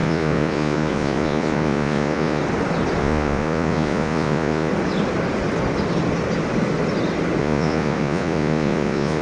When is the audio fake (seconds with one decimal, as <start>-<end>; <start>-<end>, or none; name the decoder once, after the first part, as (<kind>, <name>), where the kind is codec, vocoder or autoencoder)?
0.0-2.4 (vocoder, Vocos); 3.0-4.7; 7.4-9.2